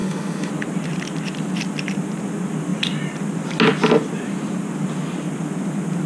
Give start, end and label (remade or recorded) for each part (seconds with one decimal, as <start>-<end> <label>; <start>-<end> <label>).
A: 0.0-0.5 remade; 0.5-6.1 recorded